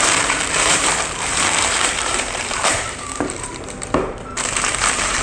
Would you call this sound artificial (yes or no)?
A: yes